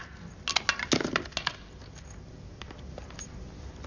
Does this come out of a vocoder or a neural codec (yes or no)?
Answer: no